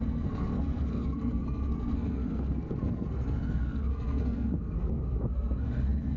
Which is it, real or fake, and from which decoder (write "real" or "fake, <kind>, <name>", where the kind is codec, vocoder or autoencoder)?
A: fake, codec, SNAC